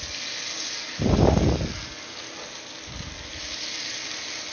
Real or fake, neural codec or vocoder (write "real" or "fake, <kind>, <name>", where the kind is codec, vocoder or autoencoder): real